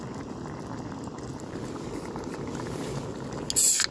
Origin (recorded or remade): recorded